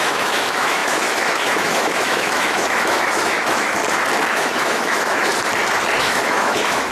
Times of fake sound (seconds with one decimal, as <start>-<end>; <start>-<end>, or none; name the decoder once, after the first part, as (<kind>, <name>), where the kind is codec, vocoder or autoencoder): 0.0-3.8 (autoencoder, DAC-VAE); 4.3-5.3; 6.0-6.9